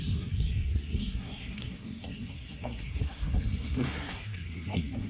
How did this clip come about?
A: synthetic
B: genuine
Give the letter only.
A